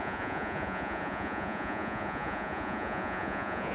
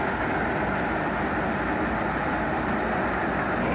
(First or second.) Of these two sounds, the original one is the second